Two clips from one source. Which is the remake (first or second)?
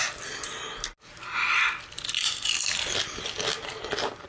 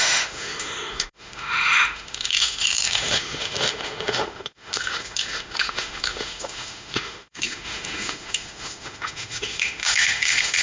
second